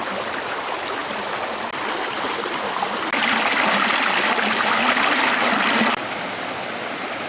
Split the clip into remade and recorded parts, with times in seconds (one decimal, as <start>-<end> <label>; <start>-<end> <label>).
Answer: 0.0-7.3 recorded